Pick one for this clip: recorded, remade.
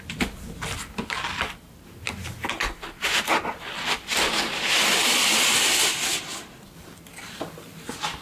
recorded